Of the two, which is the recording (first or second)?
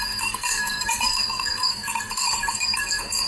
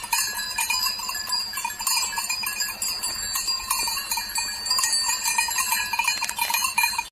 second